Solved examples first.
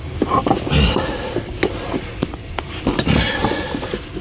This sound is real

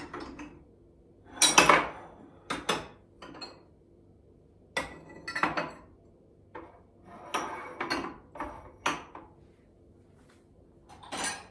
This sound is real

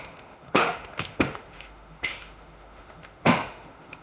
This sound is fake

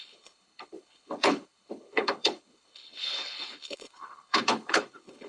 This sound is fake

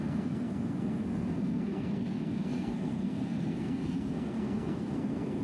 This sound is fake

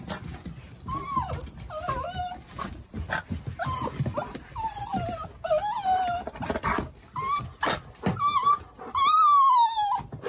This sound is real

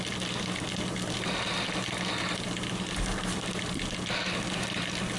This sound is real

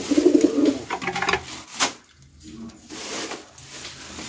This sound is real